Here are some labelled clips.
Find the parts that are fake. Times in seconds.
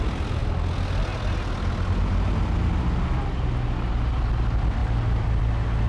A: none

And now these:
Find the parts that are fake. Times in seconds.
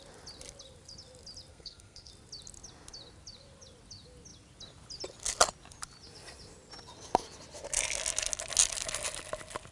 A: 1.5-2.1 (codec, SNAC)